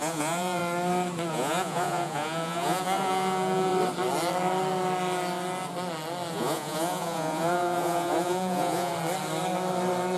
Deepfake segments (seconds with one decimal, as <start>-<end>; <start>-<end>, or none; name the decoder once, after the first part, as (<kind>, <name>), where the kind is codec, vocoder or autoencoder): 0.0-0.6 (vocoder, Vocos); 1.3-3.7; 6.3-8.9